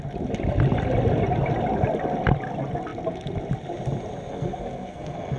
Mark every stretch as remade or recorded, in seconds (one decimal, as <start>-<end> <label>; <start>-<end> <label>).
0.0-4.3 recorded; 4.3-5.4 remade